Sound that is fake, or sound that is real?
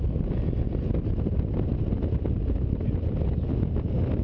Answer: real